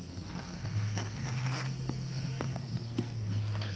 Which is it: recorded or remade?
remade